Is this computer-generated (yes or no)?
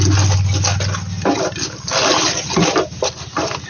no